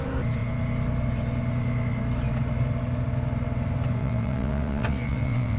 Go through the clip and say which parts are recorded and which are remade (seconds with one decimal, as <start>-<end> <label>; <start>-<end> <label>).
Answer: 0.0-4.0 recorded; 4.0-5.6 remade

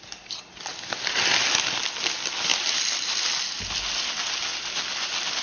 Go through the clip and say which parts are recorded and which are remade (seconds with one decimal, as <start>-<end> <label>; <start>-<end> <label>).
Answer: 0.0-5.4 recorded

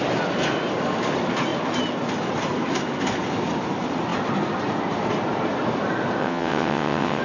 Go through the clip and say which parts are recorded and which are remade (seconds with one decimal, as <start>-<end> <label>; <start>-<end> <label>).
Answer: 0.0-6.2 recorded; 6.2-7.2 remade

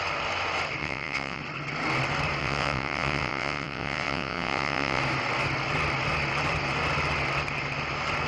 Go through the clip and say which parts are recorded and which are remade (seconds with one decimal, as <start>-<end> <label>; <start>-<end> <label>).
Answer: 0.0-0.8 recorded; 0.8-1.4 remade; 1.4-2.4 recorded; 2.4-5.0 remade; 5.0-8.3 recorded

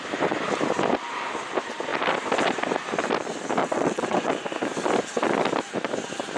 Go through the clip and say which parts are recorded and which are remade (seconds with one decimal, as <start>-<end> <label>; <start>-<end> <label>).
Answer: 0.0-3.6 recorded; 3.6-4.3 remade; 4.3-6.4 recorded

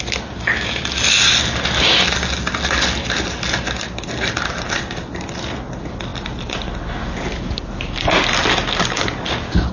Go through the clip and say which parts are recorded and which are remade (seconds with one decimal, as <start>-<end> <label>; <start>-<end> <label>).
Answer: 0.0-9.7 recorded

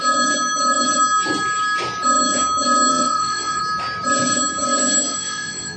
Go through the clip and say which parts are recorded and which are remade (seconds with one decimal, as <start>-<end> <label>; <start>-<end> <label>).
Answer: 0.0-2.9 recorded; 2.9-3.6 remade; 3.6-5.1 recorded; 5.1-5.8 remade